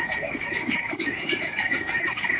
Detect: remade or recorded remade